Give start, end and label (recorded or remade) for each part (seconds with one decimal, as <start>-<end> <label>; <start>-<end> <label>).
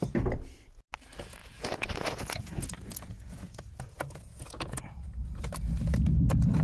0.0-1.4 recorded; 1.4-5.4 remade; 5.4-6.6 recorded